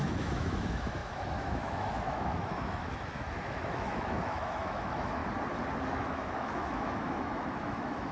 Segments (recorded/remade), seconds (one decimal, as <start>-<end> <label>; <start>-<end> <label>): 0.0-5.2 remade; 5.2-5.9 recorded; 5.9-8.1 remade